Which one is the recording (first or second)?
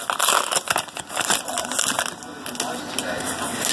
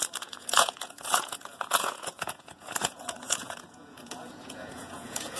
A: first